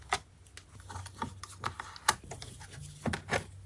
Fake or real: real